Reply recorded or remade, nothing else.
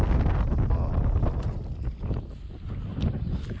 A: recorded